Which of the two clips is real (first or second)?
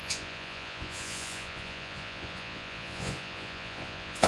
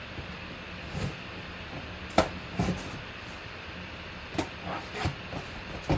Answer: second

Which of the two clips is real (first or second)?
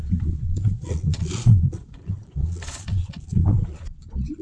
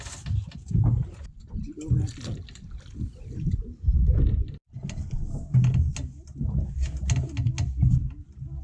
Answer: second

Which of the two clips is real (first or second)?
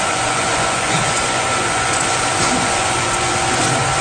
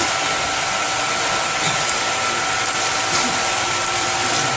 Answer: second